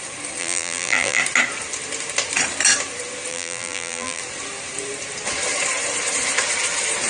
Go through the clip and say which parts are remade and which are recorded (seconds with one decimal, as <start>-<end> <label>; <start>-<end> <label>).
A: 0.0-0.4 recorded; 0.4-1.2 remade; 1.2-3.3 recorded; 3.3-4.2 remade; 4.2-7.1 recorded